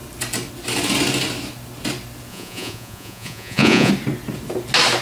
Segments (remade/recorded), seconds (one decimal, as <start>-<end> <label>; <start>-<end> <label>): 0.0-2.3 recorded; 2.3-3.9 remade; 3.9-5.0 recorded